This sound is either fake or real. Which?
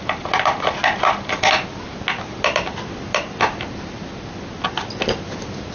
real